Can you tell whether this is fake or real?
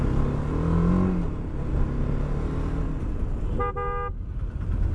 real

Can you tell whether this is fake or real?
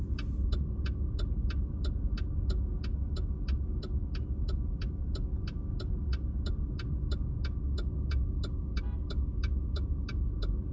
real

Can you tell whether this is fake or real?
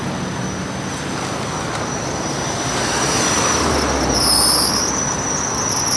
real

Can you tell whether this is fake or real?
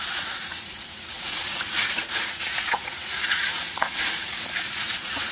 fake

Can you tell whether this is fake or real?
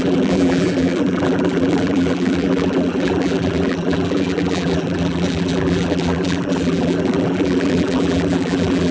fake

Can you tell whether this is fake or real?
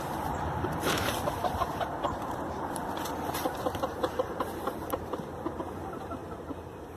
fake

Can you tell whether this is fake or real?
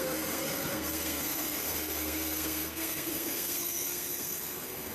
fake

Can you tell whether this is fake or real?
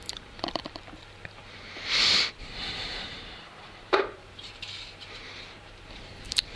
fake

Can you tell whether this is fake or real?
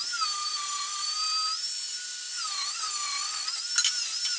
real